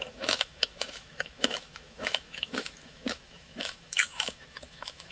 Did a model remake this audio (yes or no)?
yes